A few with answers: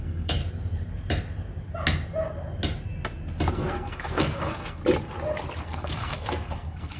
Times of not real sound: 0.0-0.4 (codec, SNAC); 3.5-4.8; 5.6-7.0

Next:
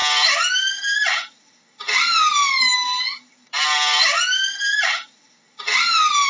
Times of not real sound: none